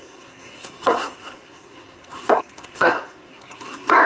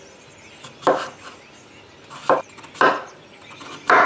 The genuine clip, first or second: second